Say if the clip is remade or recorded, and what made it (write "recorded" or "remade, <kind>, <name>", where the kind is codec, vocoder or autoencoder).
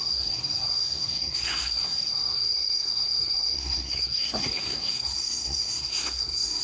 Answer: remade, codec, SNAC